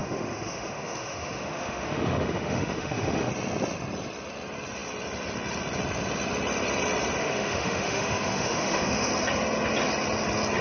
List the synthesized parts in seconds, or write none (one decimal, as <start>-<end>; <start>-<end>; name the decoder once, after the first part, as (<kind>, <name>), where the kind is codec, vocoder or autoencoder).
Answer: 0.0-3.3 (autoencoder, DAC-VAE); 7.2-9.1